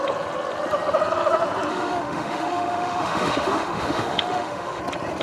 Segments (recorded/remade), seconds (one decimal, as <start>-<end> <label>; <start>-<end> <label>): 0.0-1.7 recorded; 1.7-4.8 remade; 4.8-5.2 recorded

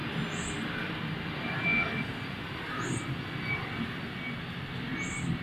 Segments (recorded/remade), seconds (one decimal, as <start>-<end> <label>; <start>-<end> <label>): 0.0-5.4 recorded

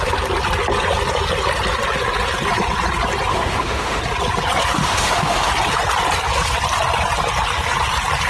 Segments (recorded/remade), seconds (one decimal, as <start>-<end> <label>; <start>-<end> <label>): 0.0-3.3 recorded; 3.3-4.0 remade; 4.0-4.8 recorded; 4.8-5.5 remade; 5.5-8.3 recorded